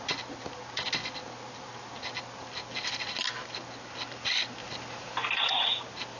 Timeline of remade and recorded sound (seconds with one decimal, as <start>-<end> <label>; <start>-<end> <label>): 0.0-6.2 recorded